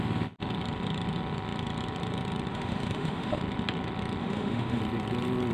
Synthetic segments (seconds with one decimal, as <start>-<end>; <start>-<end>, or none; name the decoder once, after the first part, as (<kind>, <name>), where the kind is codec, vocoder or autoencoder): 2.5-3.4 (autoencoder, DAC-VAE); 4.2-4.8

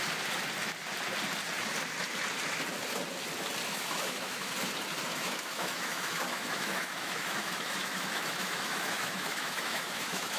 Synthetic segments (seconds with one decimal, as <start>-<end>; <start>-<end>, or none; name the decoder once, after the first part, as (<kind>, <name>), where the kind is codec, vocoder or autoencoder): 3.7-4.5 (autoencoder, DAC-VAE); 5.1-10.4

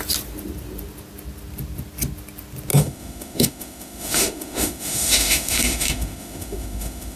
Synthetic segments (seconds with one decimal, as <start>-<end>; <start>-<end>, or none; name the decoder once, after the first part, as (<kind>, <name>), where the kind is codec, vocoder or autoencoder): 2.7-7.2 (autoencoder, DAC-VAE)

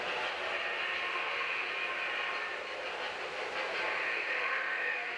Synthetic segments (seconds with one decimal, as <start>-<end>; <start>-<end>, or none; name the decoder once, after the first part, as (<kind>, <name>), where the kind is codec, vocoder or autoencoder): 1.1-1.7 (autoencoder, DAC-VAE); 4.1-5.2